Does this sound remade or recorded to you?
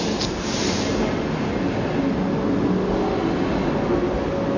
recorded